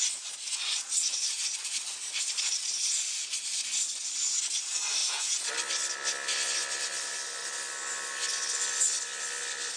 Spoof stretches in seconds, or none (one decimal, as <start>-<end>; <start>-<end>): 5.0-5.5